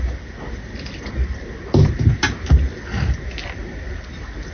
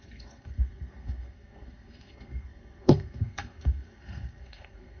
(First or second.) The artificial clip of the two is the second